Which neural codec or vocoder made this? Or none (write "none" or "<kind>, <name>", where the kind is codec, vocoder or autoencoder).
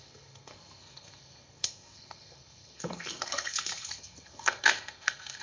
codec, SNAC